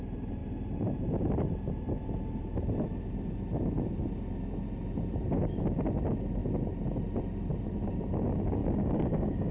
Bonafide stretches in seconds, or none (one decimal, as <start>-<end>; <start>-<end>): 0.0-8.6